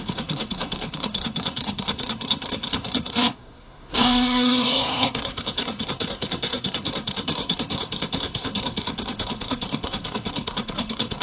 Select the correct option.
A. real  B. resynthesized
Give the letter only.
B